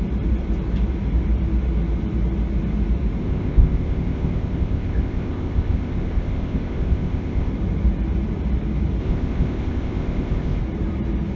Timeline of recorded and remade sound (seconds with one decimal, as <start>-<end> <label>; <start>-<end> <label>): 0.0-3.2 recorded; 3.2-7.5 remade; 7.5-9.0 recorded; 9.0-10.6 remade; 10.6-11.4 recorded